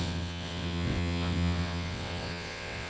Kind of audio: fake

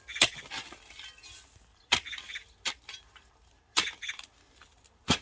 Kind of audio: real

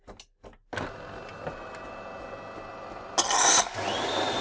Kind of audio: real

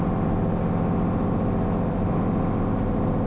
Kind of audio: real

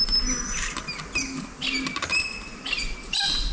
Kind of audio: real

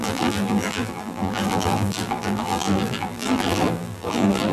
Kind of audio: fake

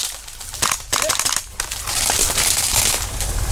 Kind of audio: real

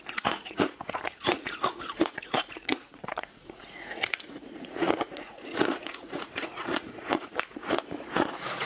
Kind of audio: fake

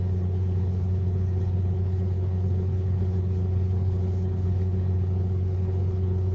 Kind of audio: fake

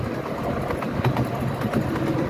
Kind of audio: real